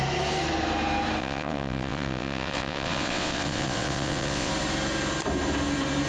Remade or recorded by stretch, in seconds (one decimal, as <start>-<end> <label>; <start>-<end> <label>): 0.0-1.2 recorded; 1.2-4.5 remade; 4.5-6.1 recorded